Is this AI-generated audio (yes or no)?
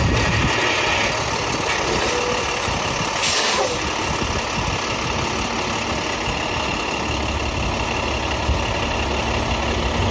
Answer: no